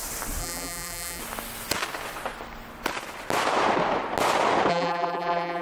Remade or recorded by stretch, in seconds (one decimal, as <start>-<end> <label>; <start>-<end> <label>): 0.0-0.4 recorded; 0.4-1.2 remade; 1.2-4.7 recorded; 4.7-5.6 remade